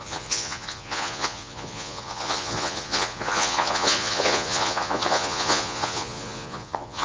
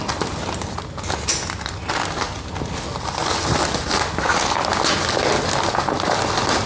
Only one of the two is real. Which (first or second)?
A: second